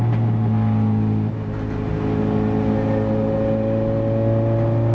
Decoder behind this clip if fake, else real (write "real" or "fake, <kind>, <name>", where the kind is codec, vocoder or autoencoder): real